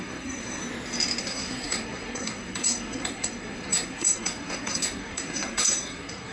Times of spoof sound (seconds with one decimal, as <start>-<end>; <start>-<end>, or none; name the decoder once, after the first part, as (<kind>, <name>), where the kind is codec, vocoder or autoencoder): 0.0-0.6 (codec, SNAC); 1.2-6.3